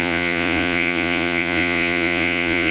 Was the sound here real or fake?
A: fake